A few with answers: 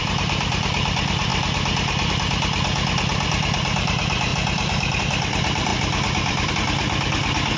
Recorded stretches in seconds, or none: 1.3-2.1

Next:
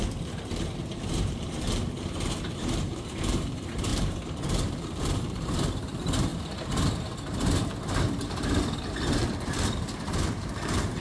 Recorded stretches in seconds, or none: 6.3-8.9

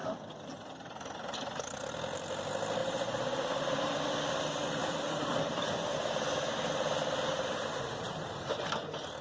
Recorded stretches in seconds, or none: 0.0-2.8; 4.1-4.8; 8.7-9.2

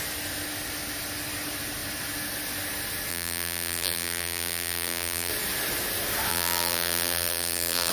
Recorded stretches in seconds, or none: 0.0-3.1; 5.3-6.3